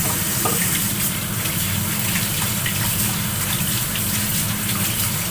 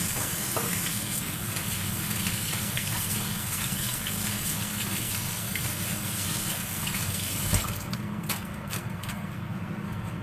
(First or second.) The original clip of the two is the first